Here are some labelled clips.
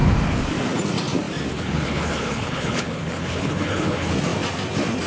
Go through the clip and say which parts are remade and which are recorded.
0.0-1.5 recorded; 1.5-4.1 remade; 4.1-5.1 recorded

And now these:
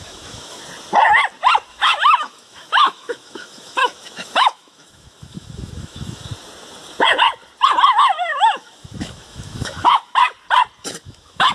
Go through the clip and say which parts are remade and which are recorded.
0.0-0.6 remade; 0.6-1.7 recorded; 1.7-6.3 remade; 6.3-8.4 recorded; 8.4-10.2 remade; 10.2-10.8 recorded; 10.8-11.5 remade